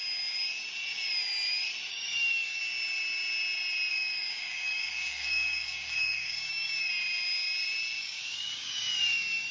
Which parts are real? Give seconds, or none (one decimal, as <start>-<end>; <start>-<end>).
0.0-1.9; 2.6-3.9; 6.9-8.0